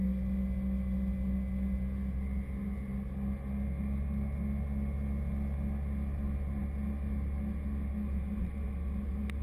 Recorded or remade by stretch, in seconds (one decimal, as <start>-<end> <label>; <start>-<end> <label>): 0.0-9.4 recorded